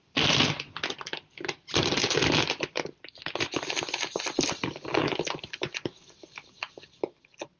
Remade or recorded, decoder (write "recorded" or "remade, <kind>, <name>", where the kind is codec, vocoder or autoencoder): recorded